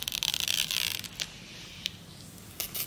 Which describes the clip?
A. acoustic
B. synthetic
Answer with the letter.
A